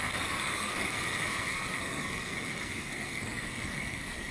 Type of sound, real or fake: fake